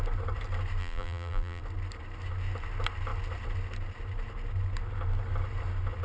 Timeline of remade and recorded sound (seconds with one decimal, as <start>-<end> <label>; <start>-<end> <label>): 0.0-0.8 recorded; 0.8-1.6 remade; 1.6-6.0 recorded